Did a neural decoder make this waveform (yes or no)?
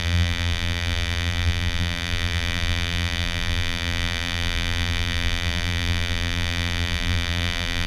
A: yes